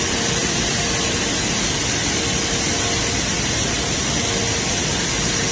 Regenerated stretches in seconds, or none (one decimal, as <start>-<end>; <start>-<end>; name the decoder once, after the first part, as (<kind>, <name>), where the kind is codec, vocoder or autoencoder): none